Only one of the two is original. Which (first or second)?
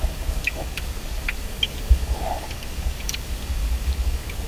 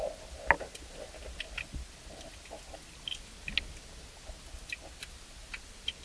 second